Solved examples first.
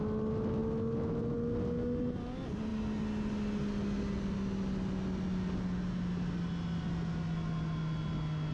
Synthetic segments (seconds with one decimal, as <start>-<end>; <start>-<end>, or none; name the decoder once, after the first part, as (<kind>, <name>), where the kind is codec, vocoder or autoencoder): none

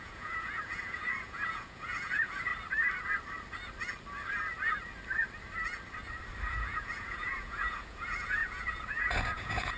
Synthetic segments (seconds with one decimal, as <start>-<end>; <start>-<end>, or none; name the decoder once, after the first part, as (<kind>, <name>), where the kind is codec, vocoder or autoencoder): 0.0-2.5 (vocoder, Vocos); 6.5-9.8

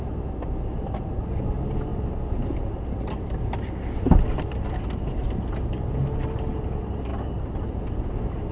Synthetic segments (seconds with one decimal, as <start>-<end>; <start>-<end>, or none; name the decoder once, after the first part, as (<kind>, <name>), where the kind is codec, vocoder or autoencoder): 7.1-8.0 (vocoder, BigVGAN v2)

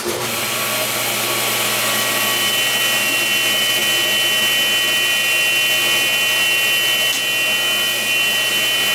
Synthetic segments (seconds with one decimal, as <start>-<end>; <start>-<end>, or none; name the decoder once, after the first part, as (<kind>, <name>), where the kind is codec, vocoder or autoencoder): none

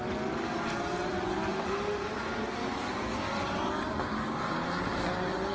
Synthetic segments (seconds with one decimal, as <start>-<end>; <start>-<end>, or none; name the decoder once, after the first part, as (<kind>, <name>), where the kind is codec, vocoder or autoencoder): none

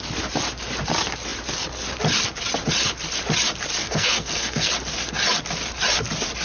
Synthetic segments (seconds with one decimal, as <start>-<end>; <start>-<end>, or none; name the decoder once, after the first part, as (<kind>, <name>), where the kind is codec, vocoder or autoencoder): 3.8-4.7 (codec, SNAC)

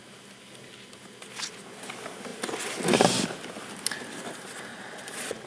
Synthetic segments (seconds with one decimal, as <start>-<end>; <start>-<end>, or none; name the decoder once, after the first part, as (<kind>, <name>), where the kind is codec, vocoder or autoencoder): 4.7-5.5 (vocoder, Vocos)